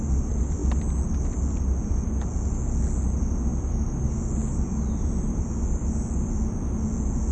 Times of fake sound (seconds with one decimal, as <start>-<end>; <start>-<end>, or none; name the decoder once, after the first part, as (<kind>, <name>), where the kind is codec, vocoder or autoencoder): none